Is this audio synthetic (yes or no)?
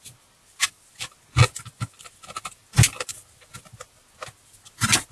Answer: no